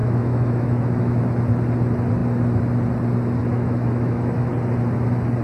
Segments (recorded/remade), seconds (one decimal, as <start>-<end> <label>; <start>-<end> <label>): 0.0-1.1 remade; 1.1-3.4 recorded; 3.4-4.5 remade; 4.5-5.4 recorded